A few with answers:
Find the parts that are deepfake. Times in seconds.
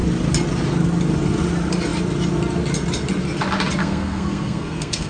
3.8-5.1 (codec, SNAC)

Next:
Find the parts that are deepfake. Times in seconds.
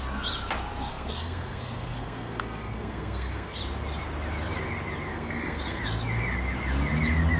0.9-3.6 (codec, SNAC); 5.1-5.8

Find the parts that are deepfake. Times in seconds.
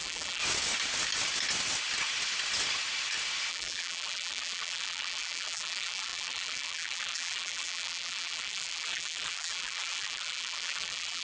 0.0-0.4 (vocoder, BigVGAN v2); 3.5-11.2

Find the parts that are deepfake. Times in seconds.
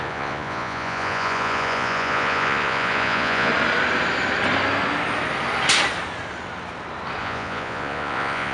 0.0-3.5 (vocoder, Vocos); 7.2-8.5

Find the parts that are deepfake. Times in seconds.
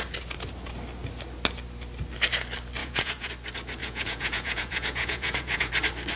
2.8-3.3 (vocoder, Vocos); 3.8-5.7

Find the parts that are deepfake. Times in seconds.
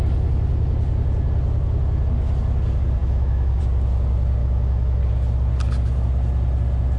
3.0-3.6 (autoencoder, DAC-VAE); 4.4-5.0